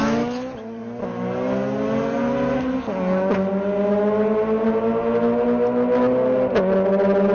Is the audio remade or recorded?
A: recorded